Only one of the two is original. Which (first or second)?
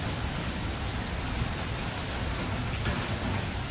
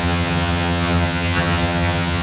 first